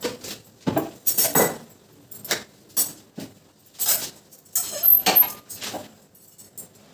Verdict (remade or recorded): recorded